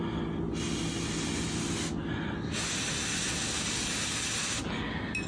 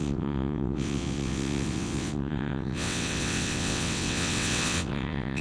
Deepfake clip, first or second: second